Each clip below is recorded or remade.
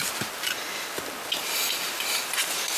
recorded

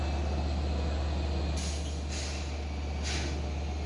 recorded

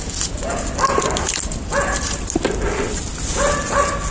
recorded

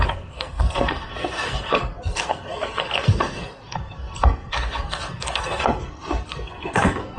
remade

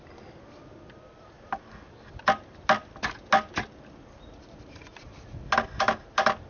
recorded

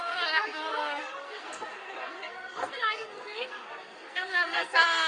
remade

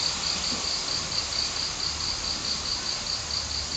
recorded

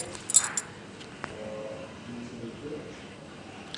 recorded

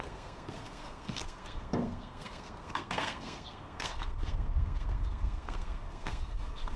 remade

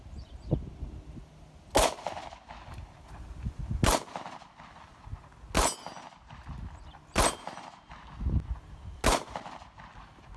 recorded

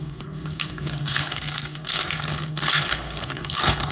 remade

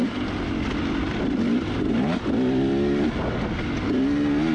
recorded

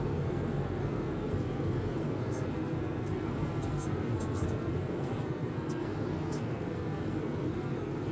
remade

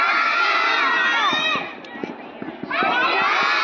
recorded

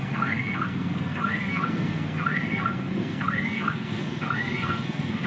remade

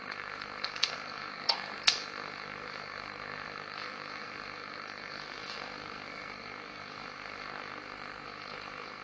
remade